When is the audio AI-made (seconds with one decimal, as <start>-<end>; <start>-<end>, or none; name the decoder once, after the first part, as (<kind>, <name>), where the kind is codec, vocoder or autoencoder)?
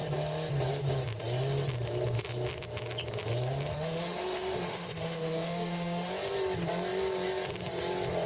3.7-6.1 (autoencoder, DAC-VAE)